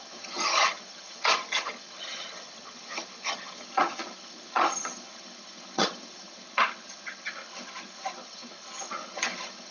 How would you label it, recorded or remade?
remade